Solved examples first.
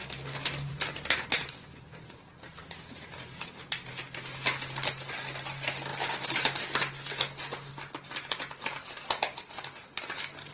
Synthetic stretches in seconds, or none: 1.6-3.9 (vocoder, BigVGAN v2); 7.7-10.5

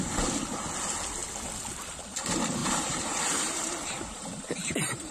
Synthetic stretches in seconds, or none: 2.6-5.1 (vocoder, BigVGAN v2)

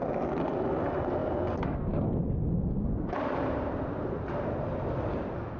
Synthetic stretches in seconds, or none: none